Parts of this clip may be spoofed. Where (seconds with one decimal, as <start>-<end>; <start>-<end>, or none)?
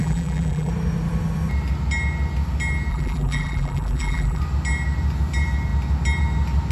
0.0-0.7; 2.9-4.4